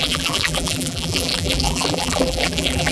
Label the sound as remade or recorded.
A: remade